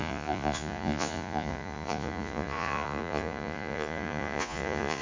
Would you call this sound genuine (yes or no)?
no